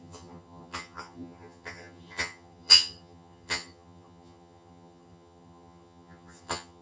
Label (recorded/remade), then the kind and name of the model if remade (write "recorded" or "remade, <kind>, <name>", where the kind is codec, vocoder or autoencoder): remade, vocoder, HiFi-GAN